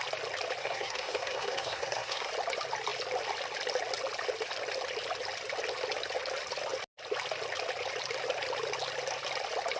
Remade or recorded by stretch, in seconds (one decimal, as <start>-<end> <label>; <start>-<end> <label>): 0.0-0.6 recorded; 0.6-2.3 remade; 2.3-9.8 recorded